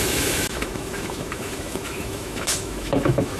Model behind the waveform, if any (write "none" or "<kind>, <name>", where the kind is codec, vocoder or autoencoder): autoencoder, DAC-VAE